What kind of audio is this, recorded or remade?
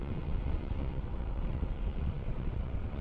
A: remade